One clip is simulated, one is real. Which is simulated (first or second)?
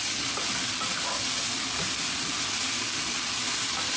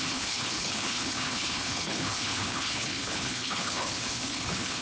second